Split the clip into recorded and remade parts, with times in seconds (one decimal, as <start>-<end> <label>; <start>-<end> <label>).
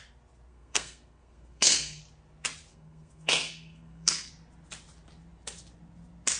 0.0-0.5 recorded; 0.5-2.0 remade; 2.0-2.7 recorded; 2.7-4.3 remade; 4.3-6.4 recorded